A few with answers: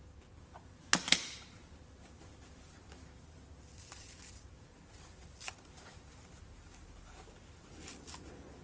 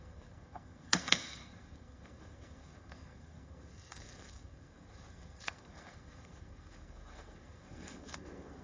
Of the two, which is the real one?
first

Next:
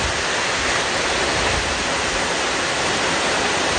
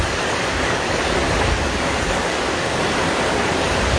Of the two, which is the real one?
first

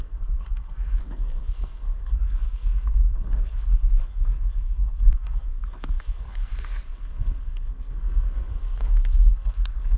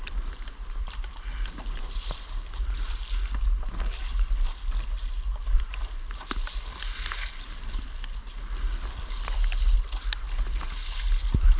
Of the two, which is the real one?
second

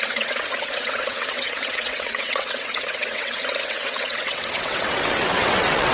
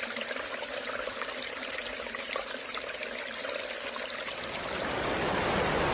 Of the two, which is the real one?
second